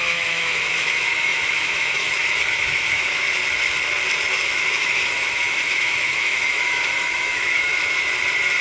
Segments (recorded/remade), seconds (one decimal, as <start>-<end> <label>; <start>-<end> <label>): 0.0-3.4 remade; 3.4-4.3 recorded; 4.3-7.8 remade; 7.8-8.6 recorded